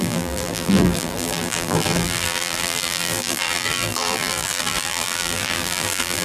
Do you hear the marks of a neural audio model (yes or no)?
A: yes